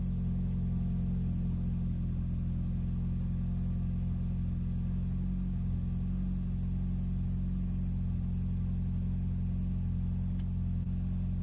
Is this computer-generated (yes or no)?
no